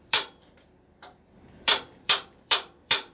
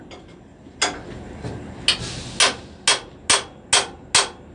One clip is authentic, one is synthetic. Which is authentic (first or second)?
second